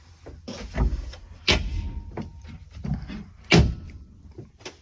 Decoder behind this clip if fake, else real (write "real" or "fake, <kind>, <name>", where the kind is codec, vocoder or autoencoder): real